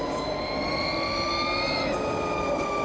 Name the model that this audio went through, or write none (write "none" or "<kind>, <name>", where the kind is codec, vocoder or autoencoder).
none